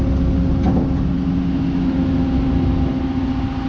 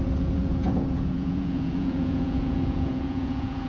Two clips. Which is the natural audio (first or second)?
first